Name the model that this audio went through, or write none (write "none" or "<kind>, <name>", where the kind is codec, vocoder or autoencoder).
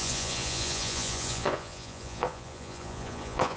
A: vocoder, Vocos